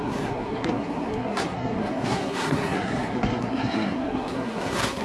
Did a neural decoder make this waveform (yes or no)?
yes